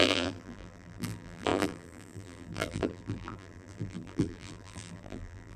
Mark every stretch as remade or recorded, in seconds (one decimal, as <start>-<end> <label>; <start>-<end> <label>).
0.0-5.6 remade